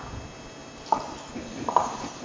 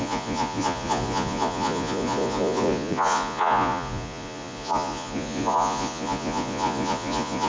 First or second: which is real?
first